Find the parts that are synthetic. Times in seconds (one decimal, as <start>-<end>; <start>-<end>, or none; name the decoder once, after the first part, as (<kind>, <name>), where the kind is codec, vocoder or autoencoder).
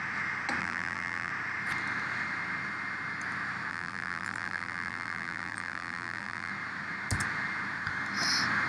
0.6-1.3 (vocoder, BigVGAN v2); 3.7-6.5